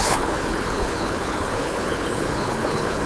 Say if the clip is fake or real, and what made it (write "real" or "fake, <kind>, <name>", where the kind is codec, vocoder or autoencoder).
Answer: fake, codec, HILCodec